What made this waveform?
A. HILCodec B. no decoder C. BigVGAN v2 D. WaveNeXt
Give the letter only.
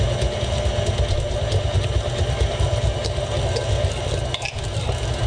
B